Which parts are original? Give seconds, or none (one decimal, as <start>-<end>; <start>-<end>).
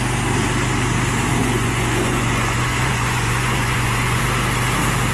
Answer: 0.0-1.4; 4.2-5.1